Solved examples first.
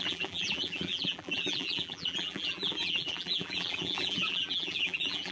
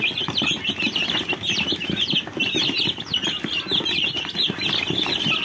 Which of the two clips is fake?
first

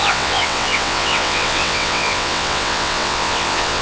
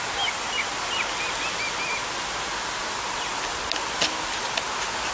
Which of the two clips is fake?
first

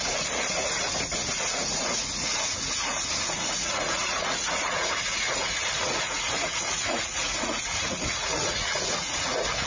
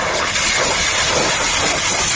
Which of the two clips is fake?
first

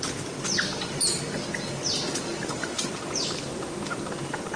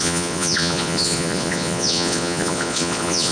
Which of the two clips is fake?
second